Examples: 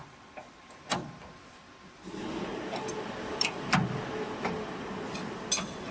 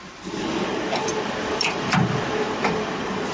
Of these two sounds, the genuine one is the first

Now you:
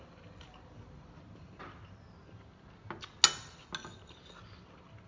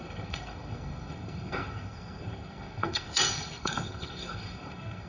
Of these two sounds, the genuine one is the first